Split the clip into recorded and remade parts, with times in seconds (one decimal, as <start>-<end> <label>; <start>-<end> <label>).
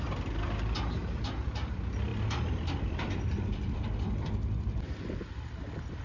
0.0-1.0 recorded; 1.0-1.7 remade; 1.7-2.1 recorded; 2.1-6.0 remade